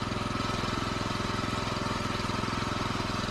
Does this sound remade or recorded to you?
recorded